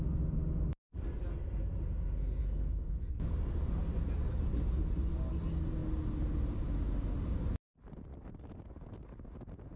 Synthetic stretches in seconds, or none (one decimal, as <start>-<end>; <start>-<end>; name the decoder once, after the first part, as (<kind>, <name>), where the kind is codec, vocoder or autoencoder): 2.4-3.1 (codec, SNAC)